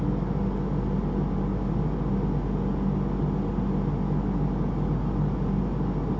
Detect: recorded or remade recorded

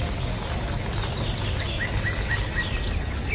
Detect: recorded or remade recorded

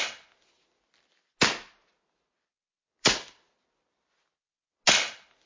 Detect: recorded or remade recorded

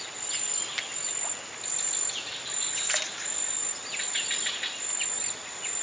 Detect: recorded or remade recorded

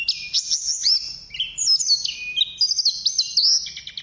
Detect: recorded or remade recorded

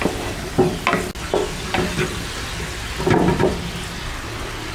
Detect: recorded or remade recorded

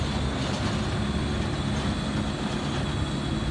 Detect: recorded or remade recorded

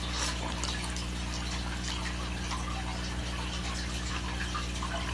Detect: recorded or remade recorded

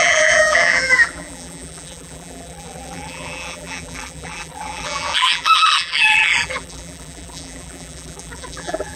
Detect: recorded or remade remade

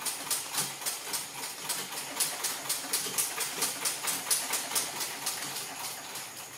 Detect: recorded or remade recorded